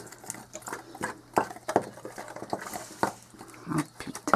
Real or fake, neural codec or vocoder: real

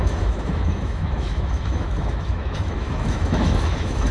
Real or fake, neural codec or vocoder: fake, autoencoder, DAC-VAE